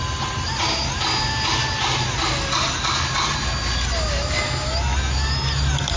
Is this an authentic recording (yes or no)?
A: yes